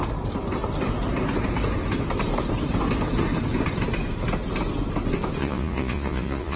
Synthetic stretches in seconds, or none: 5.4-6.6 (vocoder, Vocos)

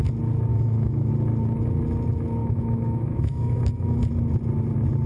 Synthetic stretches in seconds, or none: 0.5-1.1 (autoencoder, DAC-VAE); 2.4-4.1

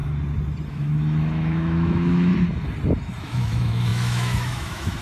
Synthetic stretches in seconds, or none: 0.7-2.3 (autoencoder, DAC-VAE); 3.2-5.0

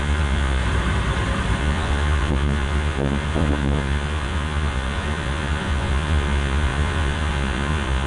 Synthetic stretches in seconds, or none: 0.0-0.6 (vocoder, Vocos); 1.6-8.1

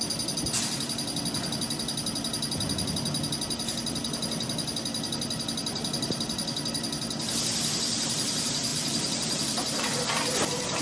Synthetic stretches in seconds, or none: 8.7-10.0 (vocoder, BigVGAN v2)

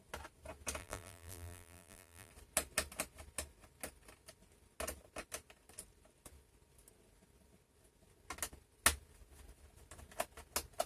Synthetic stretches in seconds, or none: 0.8-2.3 (vocoder, BigVGAN v2)

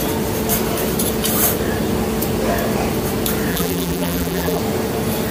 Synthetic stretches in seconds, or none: 3.5-4.6 (vocoder, BigVGAN v2)

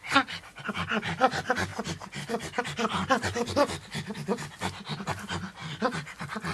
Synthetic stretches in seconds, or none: none